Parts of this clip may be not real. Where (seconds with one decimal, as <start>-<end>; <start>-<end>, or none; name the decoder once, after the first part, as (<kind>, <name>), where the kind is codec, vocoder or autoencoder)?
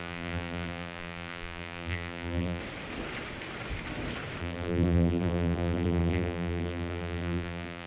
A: 0.0-2.6 (vocoder, BigVGAN v2); 4.4-7.9